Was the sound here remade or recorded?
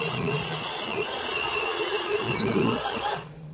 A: remade